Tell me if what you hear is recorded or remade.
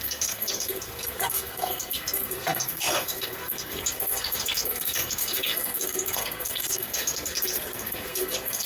remade